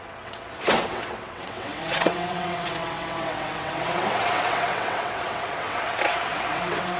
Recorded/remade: remade